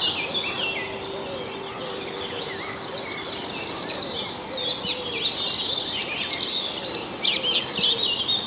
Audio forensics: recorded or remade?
recorded